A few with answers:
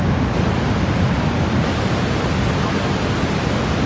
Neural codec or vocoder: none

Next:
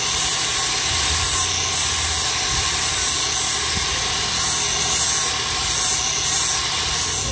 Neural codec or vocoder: none